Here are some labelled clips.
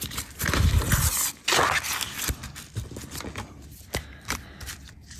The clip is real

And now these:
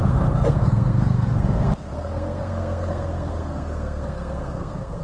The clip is fake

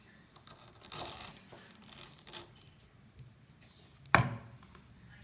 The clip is real